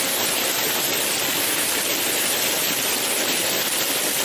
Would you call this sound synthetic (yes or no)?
no